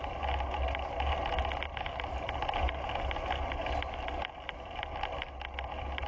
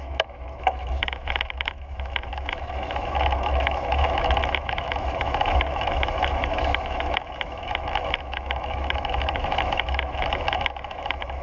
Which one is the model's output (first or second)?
second